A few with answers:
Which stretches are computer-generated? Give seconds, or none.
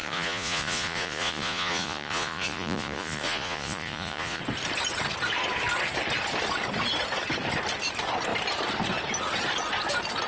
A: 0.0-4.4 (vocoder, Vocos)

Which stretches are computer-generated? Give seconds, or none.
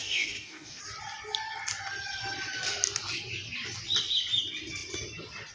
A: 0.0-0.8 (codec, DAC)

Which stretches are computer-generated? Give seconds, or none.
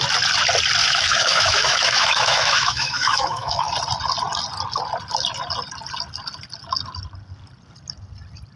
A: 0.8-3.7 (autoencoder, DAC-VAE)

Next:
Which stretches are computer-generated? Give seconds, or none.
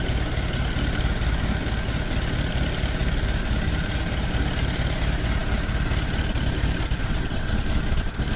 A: 7.0-7.5 (vocoder, WaveNeXt)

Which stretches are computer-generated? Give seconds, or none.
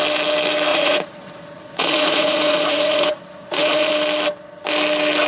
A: 0.7-3.9 (vocoder, Vocos)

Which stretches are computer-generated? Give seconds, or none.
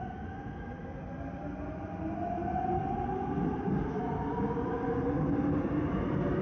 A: none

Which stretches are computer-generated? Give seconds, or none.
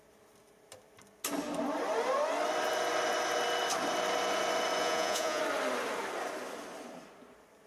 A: 4.8-5.4 (vocoder, Vocos)